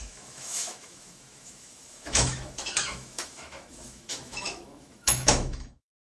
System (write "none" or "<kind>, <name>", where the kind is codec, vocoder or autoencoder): autoencoder, DAC-VAE